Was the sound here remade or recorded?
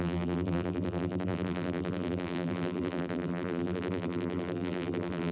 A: remade